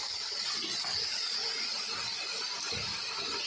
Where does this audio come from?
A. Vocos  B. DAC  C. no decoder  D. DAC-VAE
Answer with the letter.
C